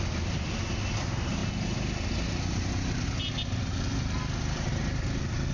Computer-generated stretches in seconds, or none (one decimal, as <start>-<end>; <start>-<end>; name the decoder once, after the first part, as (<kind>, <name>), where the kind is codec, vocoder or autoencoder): none